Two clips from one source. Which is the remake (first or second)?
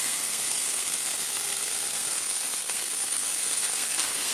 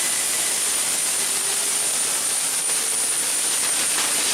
first